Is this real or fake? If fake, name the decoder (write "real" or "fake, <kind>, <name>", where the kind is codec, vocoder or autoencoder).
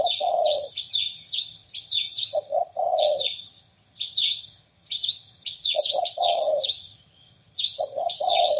fake, vocoder, HiFi-GAN